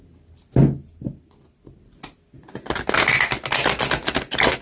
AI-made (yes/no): no